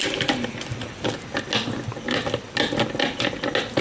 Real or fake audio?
real